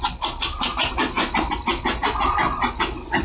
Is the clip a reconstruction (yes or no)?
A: no